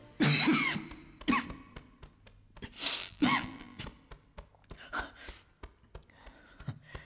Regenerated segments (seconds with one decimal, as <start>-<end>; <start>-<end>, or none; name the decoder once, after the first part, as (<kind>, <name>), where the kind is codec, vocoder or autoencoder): 3.0-3.8 (vocoder, BigVGAN v2)